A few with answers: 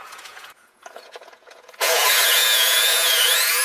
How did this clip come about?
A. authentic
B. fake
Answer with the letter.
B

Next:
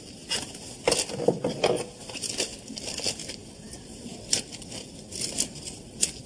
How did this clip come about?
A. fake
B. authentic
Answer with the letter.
B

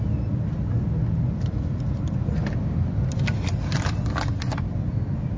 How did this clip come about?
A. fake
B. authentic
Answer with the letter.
B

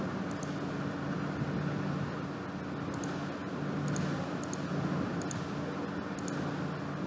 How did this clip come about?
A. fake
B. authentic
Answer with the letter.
B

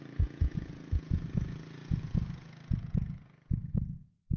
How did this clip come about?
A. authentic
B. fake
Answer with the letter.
B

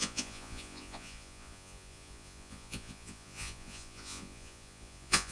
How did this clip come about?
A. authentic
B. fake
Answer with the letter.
B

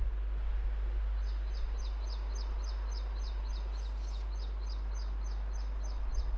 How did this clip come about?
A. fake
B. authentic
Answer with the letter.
B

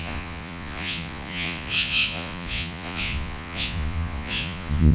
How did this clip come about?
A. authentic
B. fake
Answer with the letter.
B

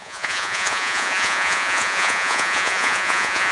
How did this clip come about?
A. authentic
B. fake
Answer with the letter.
B